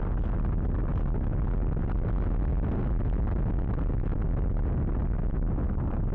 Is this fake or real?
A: real